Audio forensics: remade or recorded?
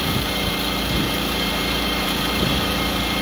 remade